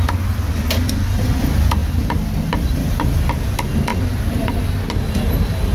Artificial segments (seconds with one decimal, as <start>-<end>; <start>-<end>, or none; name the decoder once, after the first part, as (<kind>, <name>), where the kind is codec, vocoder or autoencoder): 1.8-3.3 (vocoder, BigVGAN v2); 3.9-4.6